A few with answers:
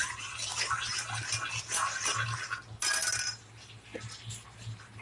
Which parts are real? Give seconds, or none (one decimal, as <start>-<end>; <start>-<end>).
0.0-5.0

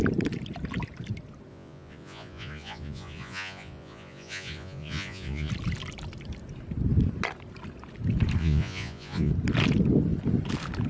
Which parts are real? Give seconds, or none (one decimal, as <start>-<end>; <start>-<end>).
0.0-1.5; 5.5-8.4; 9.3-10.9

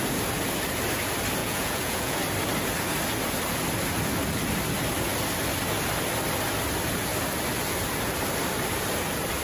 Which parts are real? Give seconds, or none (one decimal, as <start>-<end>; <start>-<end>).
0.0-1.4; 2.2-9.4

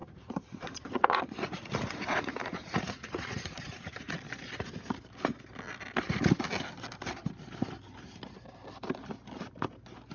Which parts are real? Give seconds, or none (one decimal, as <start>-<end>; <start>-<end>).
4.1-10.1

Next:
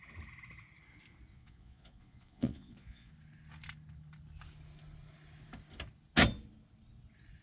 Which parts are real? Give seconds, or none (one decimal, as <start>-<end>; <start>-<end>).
0.0-1.3; 3.1-7.4

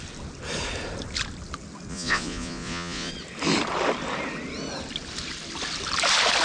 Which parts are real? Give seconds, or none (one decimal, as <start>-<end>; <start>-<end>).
0.0-1.9; 3.1-6.4

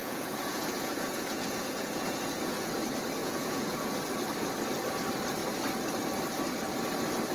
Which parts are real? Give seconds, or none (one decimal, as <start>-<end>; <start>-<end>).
2.7-3.2; 3.9-7.3